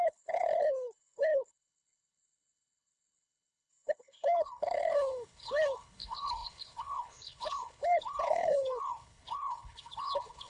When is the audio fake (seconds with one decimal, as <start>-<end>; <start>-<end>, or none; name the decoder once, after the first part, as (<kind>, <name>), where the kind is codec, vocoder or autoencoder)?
0.0-10.5 (codec, HILCodec)